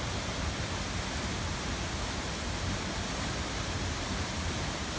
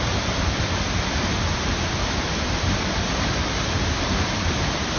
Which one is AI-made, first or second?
second